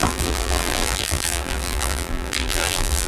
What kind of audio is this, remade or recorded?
remade